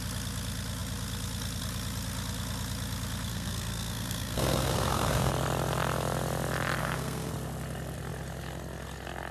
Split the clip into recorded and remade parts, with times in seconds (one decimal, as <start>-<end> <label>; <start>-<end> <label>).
0.0-3.3 recorded; 3.3-5.3 remade; 5.3-6.8 recorded; 6.8-7.3 remade; 7.3-9.3 recorded